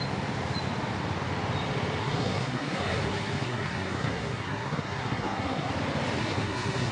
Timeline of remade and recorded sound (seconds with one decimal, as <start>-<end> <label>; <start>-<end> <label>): 0.0-2.0 recorded; 2.0-5.7 remade; 5.7-6.2 recorded; 6.2-6.9 remade